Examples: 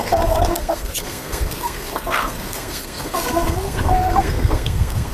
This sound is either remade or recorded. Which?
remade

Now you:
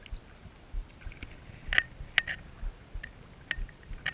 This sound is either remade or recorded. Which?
recorded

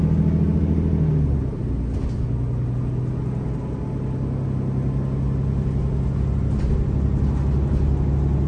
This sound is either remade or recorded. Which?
recorded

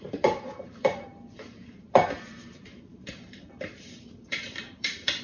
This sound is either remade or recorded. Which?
remade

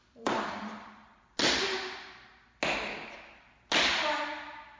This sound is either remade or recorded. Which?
recorded